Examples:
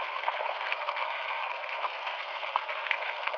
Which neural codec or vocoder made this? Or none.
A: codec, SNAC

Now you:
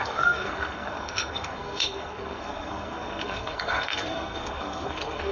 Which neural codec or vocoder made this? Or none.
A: codec, SNAC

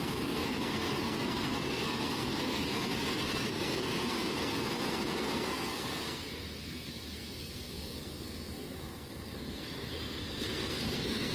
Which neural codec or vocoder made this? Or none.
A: codec, SNAC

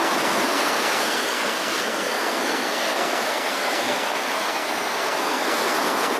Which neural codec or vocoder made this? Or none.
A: codec, SNAC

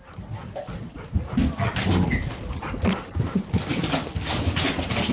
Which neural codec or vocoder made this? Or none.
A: none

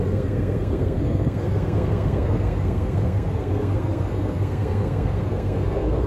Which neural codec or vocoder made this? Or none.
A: codec, SNAC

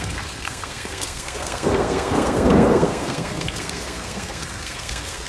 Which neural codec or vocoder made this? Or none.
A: codec, SNAC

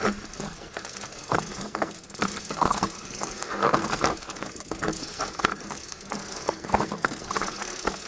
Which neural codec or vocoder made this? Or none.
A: codec, SNAC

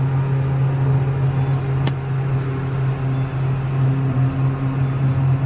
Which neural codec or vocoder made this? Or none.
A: none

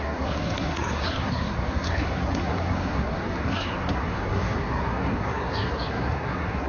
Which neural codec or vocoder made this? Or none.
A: codec, SNAC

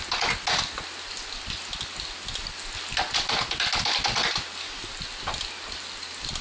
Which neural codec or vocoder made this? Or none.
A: none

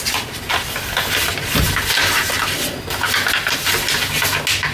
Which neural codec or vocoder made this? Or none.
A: none